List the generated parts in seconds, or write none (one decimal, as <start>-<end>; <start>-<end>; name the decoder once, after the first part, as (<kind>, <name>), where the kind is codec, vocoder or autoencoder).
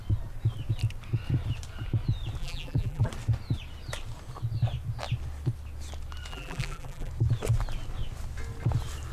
2.4-3.1 (vocoder, BigVGAN v2); 6.3-7.1